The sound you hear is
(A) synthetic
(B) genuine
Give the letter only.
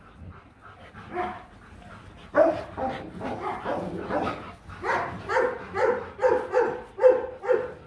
B